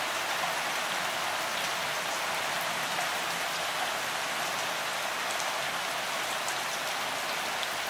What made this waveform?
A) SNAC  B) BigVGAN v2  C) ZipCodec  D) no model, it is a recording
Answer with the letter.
D